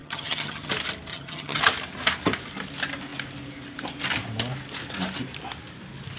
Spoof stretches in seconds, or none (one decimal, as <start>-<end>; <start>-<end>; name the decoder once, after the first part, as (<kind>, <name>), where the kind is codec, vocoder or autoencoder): 0.0-0.7 (vocoder, HiFi-GAN); 1.1-1.6